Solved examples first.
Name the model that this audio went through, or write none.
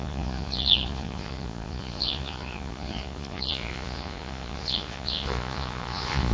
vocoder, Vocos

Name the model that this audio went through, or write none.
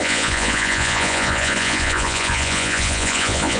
vocoder, Vocos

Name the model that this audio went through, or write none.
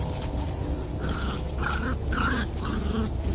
none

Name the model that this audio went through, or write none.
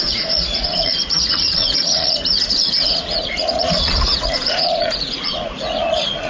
vocoder, Vocos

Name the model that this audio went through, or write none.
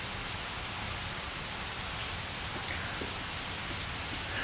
none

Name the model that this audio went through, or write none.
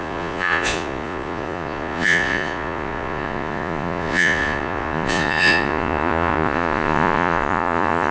vocoder, Vocos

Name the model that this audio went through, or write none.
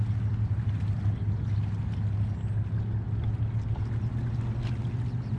none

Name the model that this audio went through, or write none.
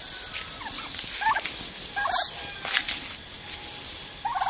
none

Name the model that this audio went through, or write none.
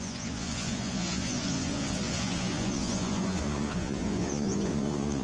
vocoder, Vocos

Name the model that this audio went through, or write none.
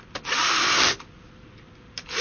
none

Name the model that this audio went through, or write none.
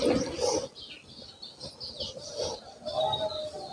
none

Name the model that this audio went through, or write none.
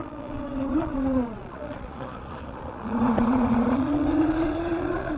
vocoder, Vocos